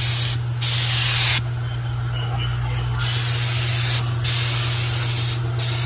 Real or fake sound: real